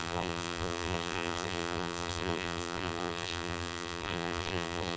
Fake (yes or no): yes